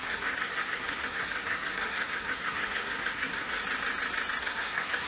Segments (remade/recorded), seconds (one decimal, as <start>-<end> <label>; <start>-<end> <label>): 0.0-3.6 remade; 3.6-4.4 recorded; 4.4-5.1 remade